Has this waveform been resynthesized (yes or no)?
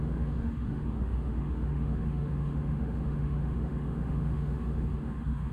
yes